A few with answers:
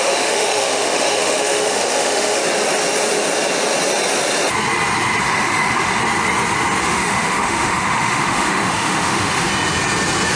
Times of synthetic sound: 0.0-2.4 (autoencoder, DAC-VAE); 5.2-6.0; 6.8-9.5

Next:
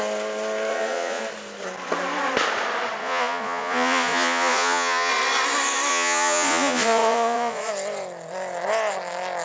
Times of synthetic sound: 0.7-1.2 (vocoder, Vocos); 3.0-5.1; 5.9-7.7